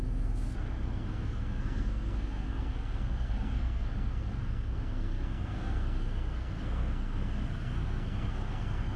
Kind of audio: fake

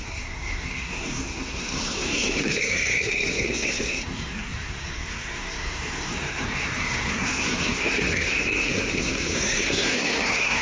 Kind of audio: fake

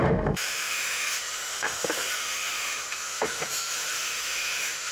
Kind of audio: fake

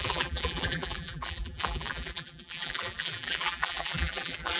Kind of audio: fake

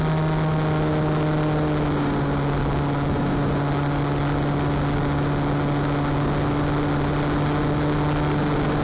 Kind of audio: real